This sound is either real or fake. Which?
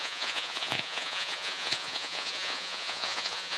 fake